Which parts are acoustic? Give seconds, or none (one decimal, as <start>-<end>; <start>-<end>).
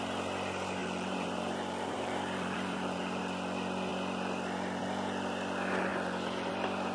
0.0-0.8; 3.2-6.9